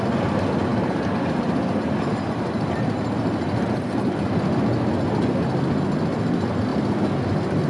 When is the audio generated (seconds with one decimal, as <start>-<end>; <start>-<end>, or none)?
0.7-4.4